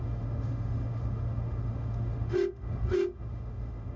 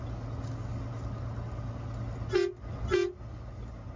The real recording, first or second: second